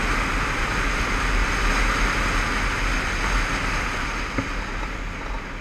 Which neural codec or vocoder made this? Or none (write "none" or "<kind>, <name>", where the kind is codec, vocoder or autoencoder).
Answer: none